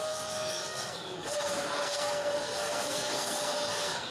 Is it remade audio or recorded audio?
remade